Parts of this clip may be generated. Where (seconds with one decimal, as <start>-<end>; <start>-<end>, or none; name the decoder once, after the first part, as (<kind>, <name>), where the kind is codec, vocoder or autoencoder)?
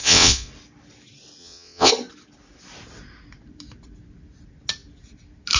0.0-0.5 (vocoder, WaveNeXt); 1.4-1.9